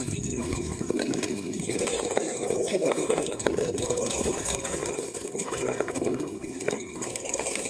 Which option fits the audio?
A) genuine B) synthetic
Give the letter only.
B